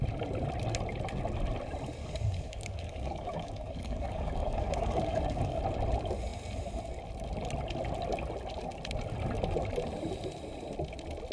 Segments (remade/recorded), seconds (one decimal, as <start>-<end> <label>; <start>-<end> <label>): 0.0-2.0 recorded; 2.0-5.6 remade; 5.6-11.3 recorded